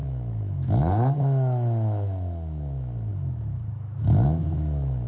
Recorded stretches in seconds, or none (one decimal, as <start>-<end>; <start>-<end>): none